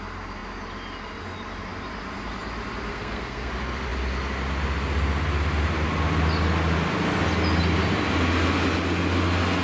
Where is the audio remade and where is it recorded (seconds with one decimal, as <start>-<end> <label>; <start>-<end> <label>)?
0.0-2.9 recorded; 2.9-3.5 remade; 3.5-9.6 recorded